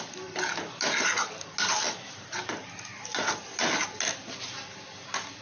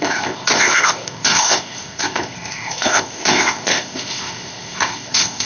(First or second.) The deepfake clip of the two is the second